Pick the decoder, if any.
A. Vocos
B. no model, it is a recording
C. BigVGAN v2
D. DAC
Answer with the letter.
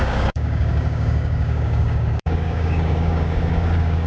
D